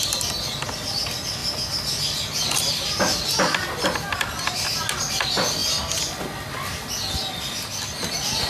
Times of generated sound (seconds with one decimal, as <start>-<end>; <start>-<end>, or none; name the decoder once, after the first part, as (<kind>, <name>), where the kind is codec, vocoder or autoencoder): 1.4-3.3 (vocoder, BigVGAN v2)